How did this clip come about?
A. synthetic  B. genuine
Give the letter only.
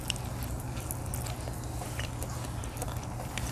B